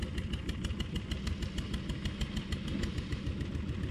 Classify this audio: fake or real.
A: real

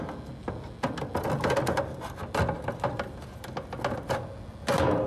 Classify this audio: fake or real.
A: real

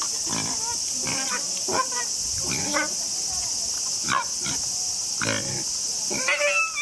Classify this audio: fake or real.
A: real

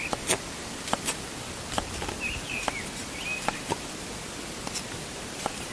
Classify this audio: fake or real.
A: real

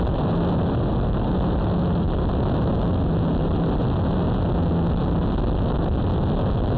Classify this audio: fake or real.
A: real